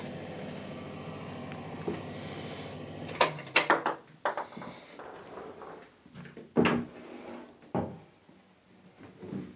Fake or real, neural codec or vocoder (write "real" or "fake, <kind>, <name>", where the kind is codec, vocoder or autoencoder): real